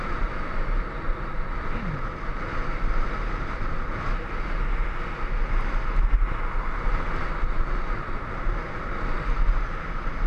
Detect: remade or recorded recorded